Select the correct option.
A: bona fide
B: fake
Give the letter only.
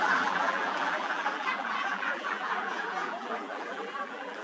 B